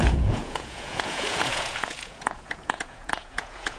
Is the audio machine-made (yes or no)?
yes